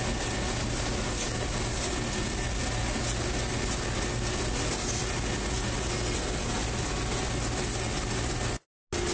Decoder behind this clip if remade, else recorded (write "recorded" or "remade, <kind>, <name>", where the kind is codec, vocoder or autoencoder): recorded